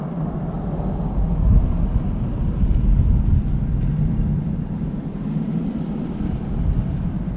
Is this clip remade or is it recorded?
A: recorded